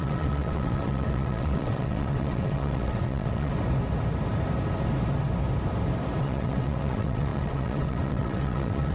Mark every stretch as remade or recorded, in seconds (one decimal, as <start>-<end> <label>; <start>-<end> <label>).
0.0-3.5 remade; 3.5-6.2 recorded; 6.2-8.9 remade